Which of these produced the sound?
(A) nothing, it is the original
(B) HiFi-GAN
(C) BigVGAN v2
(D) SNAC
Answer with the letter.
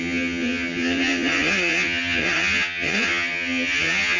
B